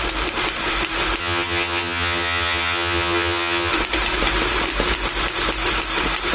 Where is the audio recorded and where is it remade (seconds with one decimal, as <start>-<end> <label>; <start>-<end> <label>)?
0.0-1.2 recorded; 1.2-3.7 remade; 3.7-6.3 recorded